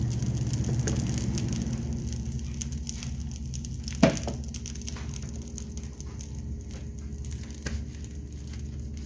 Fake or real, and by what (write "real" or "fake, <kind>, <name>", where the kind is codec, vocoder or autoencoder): real